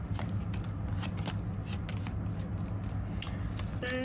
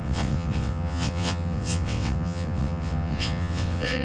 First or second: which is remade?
second